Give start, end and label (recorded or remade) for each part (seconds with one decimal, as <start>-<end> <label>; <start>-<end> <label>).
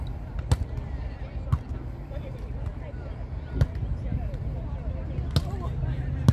0.0-6.3 recorded